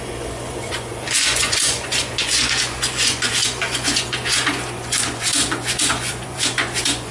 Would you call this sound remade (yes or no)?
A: yes